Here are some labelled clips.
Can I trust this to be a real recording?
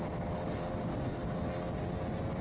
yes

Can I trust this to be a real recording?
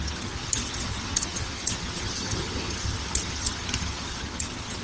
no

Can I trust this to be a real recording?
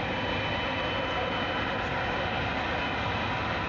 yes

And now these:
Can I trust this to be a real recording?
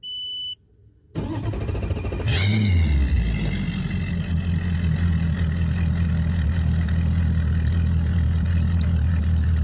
yes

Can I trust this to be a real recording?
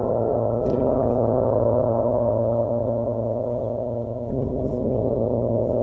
no